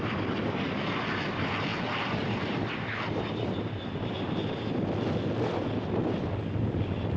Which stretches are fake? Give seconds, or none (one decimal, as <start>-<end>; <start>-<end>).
none